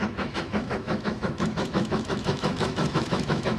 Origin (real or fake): fake